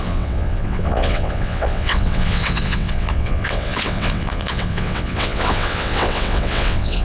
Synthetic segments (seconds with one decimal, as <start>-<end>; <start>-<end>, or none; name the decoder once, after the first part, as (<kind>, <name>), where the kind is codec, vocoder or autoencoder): 0.0-7.0 (vocoder, WaveNeXt)

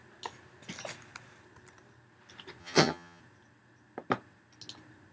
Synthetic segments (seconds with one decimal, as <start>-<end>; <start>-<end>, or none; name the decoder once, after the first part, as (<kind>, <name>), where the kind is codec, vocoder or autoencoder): 2.6-3.2 (vocoder, HiFi-GAN)